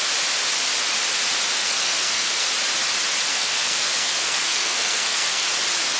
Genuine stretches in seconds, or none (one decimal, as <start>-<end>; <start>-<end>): 0.0-1.6; 2.5-3.3; 5.5-6.0